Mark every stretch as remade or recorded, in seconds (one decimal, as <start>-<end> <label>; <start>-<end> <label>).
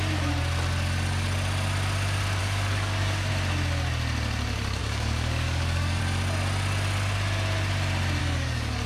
0.0-2.4 recorded; 2.4-3.3 remade; 3.3-4.8 recorded; 4.8-6.0 remade; 6.0-8.2 recorded; 8.2-8.9 remade